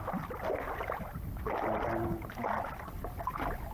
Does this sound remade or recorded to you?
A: recorded